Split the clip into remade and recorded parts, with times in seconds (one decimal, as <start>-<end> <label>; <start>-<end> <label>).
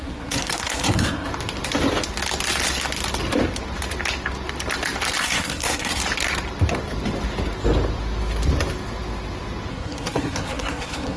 0.0-1.3 remade; 1.3-5.2 recorded; 5.2-6.0 remade; 6.0-9.7 recorded; 9.7-11.2 remade